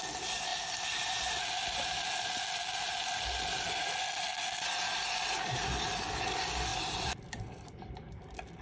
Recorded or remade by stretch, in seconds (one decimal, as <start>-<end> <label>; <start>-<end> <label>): 0.0-0.5 recorded; 0.5-2.0 remade; 2.0-6.7 recorded; 6.7-8.1 remade; 8.1-8.6 recorded